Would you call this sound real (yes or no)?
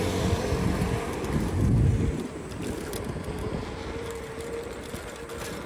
yes